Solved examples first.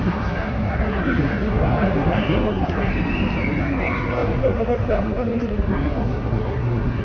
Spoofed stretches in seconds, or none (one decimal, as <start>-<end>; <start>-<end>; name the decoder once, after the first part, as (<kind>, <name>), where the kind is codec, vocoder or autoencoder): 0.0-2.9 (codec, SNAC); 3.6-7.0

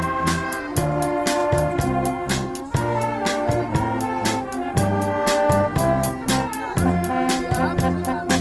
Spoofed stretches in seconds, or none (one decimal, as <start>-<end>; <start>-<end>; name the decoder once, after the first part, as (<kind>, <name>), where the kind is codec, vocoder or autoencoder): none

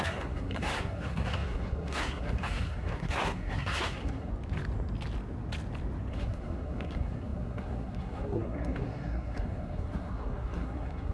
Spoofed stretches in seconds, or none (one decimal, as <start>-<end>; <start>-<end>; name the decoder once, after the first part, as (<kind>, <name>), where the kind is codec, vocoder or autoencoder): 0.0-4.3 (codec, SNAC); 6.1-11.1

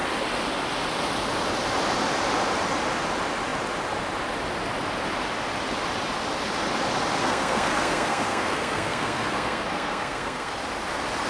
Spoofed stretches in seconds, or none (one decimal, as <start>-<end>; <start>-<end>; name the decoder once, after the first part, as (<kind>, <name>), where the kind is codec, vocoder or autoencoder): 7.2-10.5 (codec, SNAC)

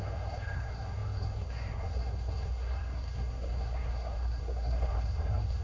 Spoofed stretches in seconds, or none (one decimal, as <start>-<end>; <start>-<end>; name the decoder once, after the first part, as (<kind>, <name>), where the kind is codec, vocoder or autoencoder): 0.0-5.6 (codec, SNAC)